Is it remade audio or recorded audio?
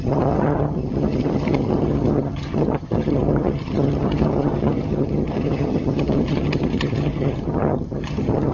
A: remade